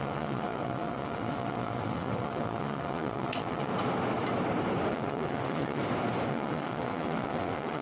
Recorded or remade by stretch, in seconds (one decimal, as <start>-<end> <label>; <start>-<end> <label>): 0.0-3.7 remade; 3.7-4.9 recorded; 4.9-5.8 remade; 5.8-6.3 recorded; 6.3-7.8 remade